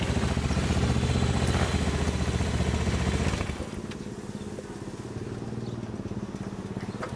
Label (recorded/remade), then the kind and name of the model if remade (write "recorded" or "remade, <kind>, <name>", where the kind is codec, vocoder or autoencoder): recorded